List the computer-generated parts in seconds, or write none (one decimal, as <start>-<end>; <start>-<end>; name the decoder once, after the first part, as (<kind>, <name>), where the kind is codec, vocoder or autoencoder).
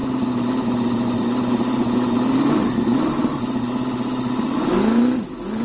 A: none